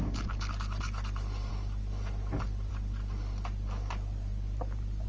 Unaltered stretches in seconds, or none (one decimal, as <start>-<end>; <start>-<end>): 0.0-4.3